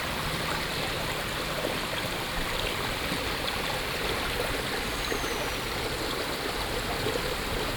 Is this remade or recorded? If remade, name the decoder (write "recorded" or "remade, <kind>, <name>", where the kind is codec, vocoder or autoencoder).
remade, vocoder, BigVGAN v2